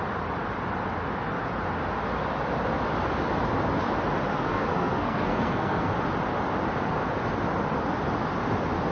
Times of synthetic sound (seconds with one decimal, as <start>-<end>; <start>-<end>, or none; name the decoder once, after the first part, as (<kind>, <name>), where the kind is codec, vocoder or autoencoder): 4.3-5.9 (codec, SNAC)